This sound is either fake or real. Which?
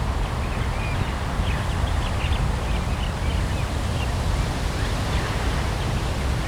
real